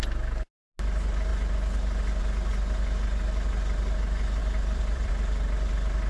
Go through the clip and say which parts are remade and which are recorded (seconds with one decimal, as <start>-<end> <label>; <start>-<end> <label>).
0.0-4.4 recorded; 4.4-5.1 remade; 5.1-6.1 recorded